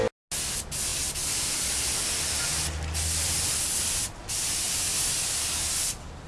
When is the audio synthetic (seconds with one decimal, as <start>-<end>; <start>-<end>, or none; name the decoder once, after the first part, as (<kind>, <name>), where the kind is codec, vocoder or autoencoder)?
none